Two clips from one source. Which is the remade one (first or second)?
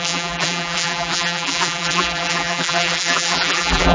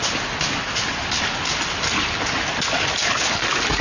first